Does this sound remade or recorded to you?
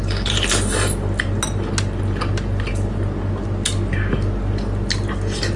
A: recorded